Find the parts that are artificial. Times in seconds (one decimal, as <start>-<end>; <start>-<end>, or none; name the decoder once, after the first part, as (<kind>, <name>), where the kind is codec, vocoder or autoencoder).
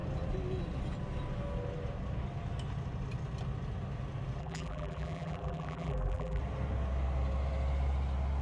4.4-6.4 (vocoder, BigVGAN v2)